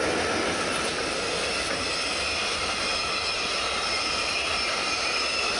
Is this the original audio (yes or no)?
yes